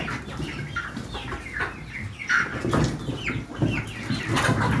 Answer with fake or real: real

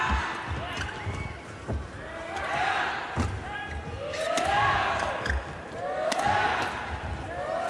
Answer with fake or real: real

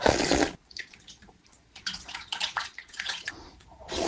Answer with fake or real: fake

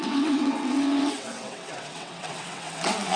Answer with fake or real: fake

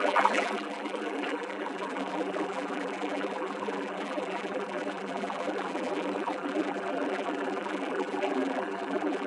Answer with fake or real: fake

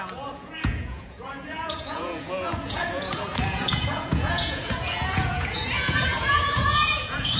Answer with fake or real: fake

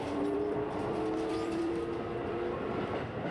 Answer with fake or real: fake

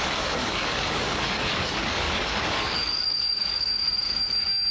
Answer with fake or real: fake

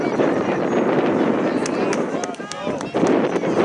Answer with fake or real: real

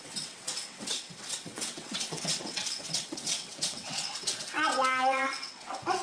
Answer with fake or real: fake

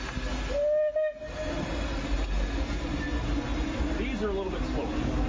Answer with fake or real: real